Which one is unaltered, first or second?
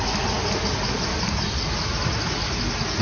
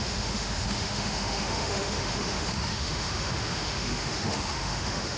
first